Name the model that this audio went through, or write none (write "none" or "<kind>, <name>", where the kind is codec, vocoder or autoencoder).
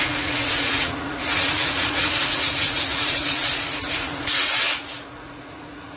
vocoder, Vocos